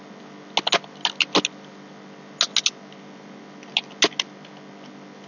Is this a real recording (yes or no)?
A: yes